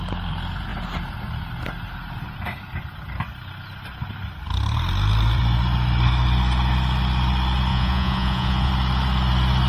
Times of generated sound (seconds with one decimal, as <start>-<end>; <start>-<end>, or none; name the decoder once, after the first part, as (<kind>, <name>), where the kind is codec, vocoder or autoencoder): 7.7-8.7 (vocoder, Vocos)